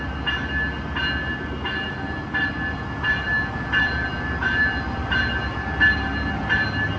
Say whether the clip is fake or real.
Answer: real